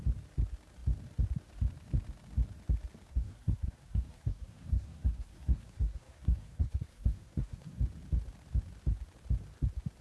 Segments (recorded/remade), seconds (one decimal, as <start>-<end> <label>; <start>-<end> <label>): 0.0-3.1 recorded; 3.1-7.8 remade; 7.8-10.0 recorded